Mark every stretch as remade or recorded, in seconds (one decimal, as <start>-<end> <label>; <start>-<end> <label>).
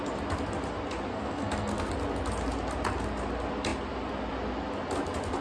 0.0-1.1 recorded; 1.1-1.9 remade; 1.9-5.4 recorded